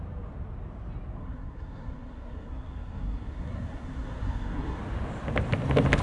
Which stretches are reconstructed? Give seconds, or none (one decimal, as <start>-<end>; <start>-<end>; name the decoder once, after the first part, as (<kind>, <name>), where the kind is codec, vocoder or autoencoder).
1.2-4.8 (codec, SNAC)